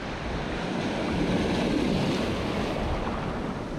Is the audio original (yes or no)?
yes